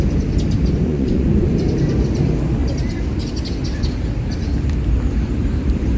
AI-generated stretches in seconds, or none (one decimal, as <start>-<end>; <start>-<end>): 0.9-1.5